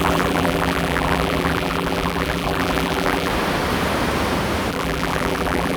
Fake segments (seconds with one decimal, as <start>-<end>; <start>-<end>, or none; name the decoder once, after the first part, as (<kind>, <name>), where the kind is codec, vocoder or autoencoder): 0.0-3.3 (vocoder, BigVGAN v2); 4.7-5.8